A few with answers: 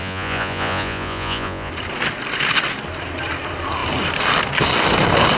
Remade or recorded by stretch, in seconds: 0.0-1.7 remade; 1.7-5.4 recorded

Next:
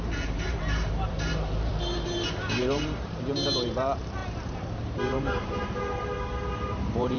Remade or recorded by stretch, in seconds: 0.0-1.7 remade; 1.7-2.6 recorded; 2.6-7.2 remade

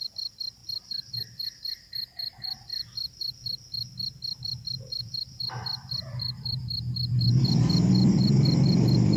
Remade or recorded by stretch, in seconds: 0.0-0.6 remade; 0.6-1.1 recorded; 1.1-2.7 remade; 2.7-7.9 recorded; 7.9-9.2 remade

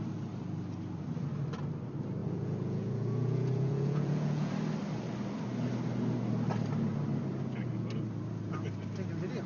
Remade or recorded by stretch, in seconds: 0.0-2.2 recorded; 2.2-4.5 remade; 4.5-9.5 recorded

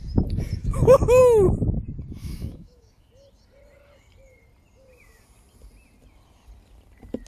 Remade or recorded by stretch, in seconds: 0.0-0.6 recorded; 0.6-1.2 remade; 1.2-2.2 recorded; 2.2-3.1 remade; 3.1-7.3 recorded

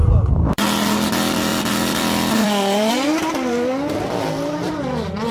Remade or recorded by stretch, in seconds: 0.0-0.6 remade; 0.6-1.5 recorded; 1.5-2.9 remade; 2.9-5.3 recorded